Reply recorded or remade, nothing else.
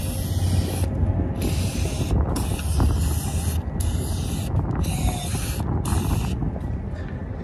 recorded